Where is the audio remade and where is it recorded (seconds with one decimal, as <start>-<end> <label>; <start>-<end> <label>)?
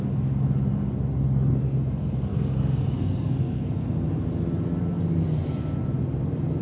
0.0-1.6 recorded; 1.6-3.9 remade; 3.9-6.6 recorded